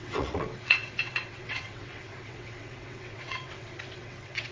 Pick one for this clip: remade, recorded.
remade